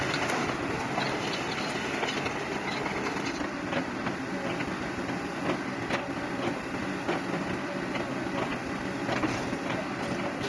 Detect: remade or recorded recorded